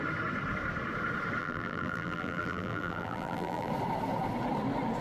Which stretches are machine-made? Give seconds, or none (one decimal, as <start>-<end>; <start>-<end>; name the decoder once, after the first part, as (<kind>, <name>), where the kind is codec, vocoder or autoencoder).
1.4-3.7 (vocoder, BigVGAN v2)